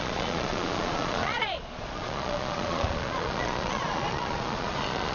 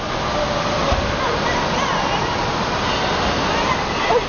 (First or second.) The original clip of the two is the second